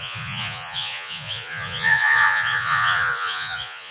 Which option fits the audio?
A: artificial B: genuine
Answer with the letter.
A